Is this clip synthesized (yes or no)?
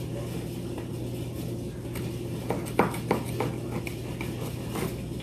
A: no